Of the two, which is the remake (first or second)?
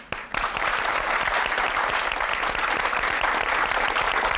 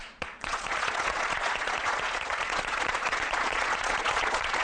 second